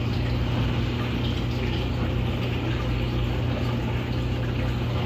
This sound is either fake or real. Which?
real